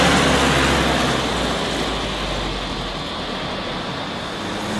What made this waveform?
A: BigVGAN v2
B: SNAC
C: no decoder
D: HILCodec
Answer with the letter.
C